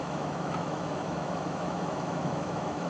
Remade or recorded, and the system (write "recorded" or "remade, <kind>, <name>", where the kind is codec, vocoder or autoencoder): remade, autoencoder, DAC-VAE